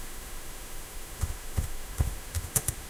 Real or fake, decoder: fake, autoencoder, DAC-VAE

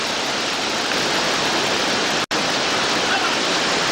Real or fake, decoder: real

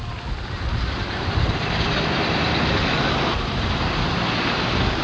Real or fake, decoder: real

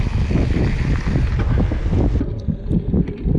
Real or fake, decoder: real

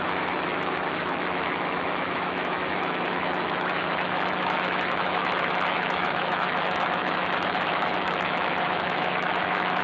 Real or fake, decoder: fake, autoencoder, DAC-VAE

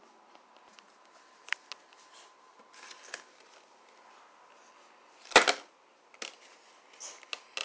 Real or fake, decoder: real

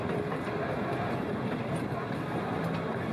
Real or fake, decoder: real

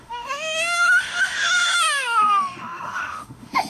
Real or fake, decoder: fake, autoencoder, DAC-VAE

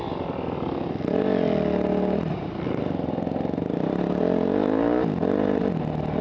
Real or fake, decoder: real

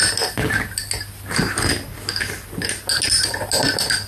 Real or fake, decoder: real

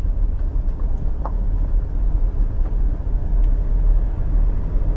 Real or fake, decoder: real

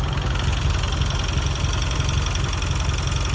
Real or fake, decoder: real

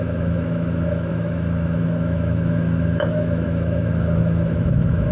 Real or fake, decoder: fake, autoencoder, DAC-VAE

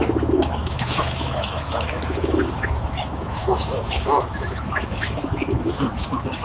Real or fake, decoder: fake, autoencoder, DAC-VAE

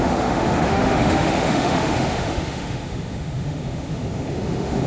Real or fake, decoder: fake, autoencoder, DAC-VAE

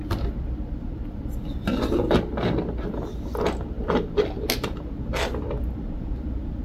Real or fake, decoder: real